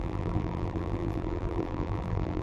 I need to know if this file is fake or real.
fake